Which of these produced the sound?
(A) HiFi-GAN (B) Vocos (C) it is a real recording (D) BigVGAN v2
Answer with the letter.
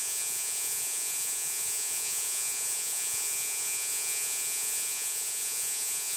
B